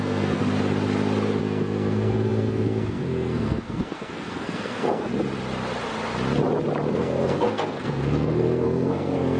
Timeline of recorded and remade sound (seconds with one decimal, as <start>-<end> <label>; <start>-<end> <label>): 0.0-0.4 remade; 0.4-1.4 recorded; 1.4-5.1 remade; 5.1-6.9 recorded; 6.9-9.4 remade